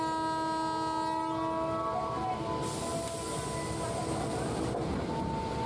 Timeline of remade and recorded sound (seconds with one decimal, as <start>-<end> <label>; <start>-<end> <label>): 0.0-5.7 recorded